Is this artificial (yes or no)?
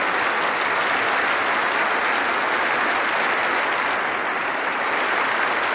no